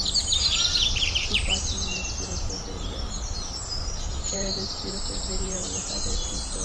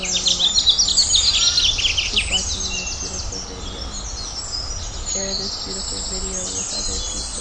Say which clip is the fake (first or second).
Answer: first